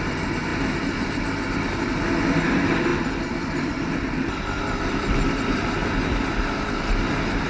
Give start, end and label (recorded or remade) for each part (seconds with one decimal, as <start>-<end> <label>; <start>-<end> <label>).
0.0-7.5 recorded